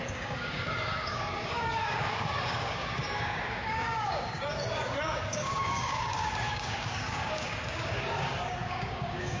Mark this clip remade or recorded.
remade